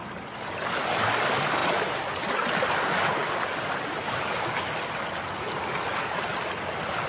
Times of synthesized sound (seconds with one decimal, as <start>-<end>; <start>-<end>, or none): none